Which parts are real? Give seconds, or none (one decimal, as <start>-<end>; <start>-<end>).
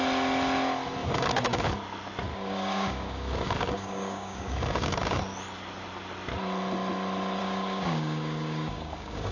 0.0-1.0; 1.7-2.3; 5.2-7.4